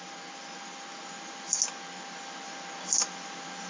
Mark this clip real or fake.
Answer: real